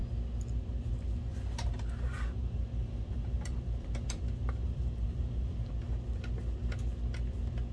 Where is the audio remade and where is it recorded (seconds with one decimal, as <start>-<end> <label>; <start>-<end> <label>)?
0.0-1.3 recorded; 1.3-5.7 remade; 5.7-7.7 recorded